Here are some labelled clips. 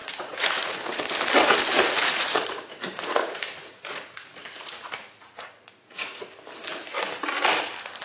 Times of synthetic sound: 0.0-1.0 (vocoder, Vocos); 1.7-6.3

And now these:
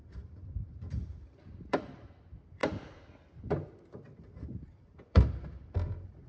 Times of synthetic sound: 0.0-2.6 (vocoder, BigVGAN v2); 3.4-6.3